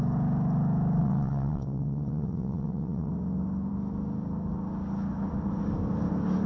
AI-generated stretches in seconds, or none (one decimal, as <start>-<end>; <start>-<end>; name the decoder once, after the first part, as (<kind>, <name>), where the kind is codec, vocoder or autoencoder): 1.0-3.1 (vocoder, WaveNeXt)